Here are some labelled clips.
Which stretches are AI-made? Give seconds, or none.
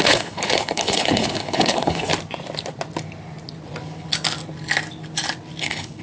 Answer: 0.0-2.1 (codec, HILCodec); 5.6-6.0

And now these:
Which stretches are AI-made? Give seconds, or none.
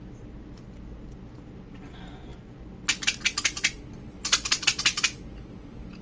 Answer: none